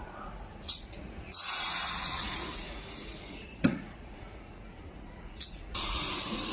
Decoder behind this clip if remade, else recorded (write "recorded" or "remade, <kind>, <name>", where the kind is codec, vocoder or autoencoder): remade, vocoder, Vocos